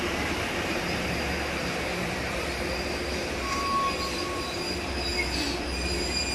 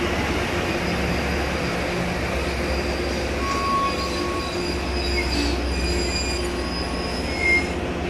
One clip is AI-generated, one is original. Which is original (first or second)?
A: second